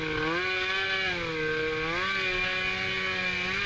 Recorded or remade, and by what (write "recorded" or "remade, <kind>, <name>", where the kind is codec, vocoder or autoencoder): recorded